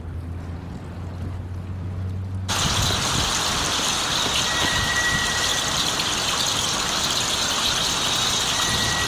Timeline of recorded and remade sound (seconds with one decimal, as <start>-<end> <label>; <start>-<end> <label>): 0.0-9.1 recorded